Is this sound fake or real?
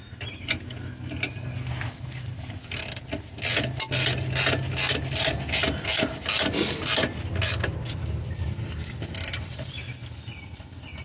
real